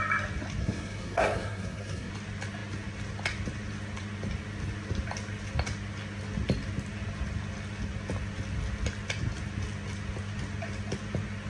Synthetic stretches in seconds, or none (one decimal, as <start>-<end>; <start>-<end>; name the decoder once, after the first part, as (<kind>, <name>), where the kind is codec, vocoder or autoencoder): 0.6-2.1 (codec, SNAC)